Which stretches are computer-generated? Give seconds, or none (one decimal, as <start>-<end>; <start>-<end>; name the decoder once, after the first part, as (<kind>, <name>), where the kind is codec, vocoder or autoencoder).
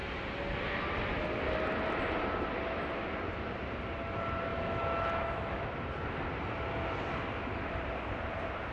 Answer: 4.5-5.7 (autoencoder, DAC-VAE)